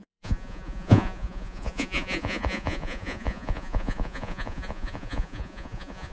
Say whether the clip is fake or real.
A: fake